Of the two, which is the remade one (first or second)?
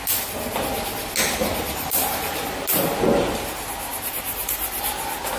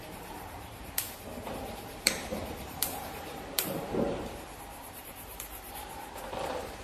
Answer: second